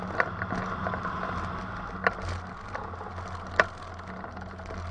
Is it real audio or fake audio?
real